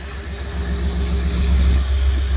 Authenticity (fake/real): real